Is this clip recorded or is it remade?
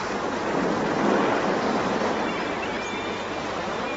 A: recorded